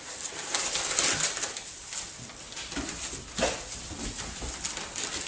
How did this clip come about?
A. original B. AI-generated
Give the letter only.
A